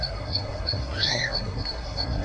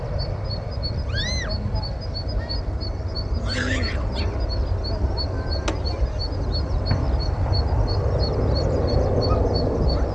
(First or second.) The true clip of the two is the second